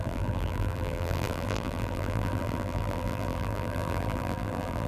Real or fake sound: fake